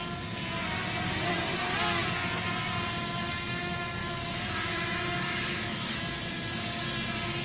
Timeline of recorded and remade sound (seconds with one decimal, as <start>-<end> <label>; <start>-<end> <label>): 0.0-4.0 recorded; 4.0-6.0 remade; 6.0-7.4 recorded